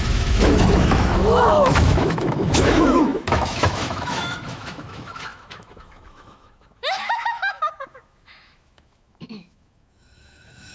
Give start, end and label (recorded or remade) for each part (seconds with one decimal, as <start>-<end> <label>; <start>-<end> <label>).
0.0-10.7 remade